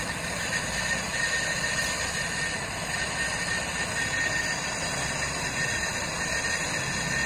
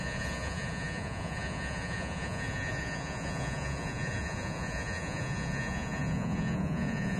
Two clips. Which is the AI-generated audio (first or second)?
second